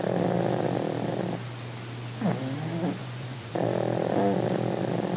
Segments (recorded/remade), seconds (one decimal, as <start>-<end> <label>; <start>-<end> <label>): 0.0-3.0 recorded; 3.0-3.5 remade; 3.5-5.2 recorded